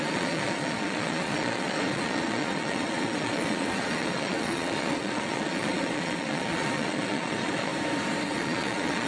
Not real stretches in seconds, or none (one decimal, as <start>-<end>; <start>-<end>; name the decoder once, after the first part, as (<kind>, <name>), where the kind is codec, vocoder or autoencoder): 0.0-7.7 (vocoder, Vocos); 8.3-9.1